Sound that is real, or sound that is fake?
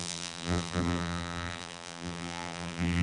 fake